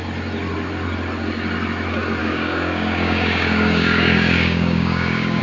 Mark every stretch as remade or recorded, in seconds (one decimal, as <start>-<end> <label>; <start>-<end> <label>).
0.0-2.2 recorded; 2.2-5.4 remade